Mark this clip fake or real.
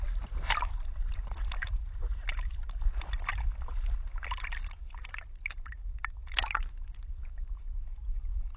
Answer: real